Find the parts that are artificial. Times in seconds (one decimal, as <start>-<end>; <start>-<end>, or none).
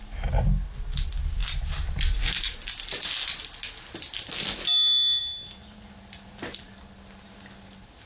none